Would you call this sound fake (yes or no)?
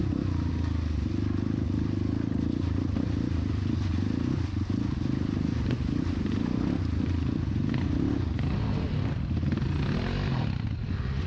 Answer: no